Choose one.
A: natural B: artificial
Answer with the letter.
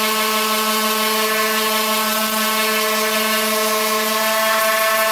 A